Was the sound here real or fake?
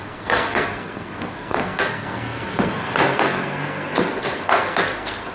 fake